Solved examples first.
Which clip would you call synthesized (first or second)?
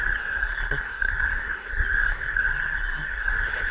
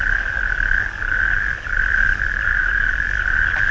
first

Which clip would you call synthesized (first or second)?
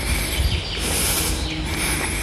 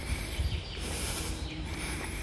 second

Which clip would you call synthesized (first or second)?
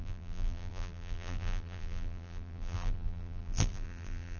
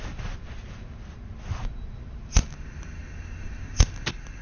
first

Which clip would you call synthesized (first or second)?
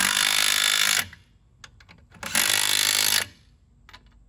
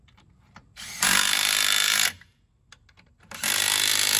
second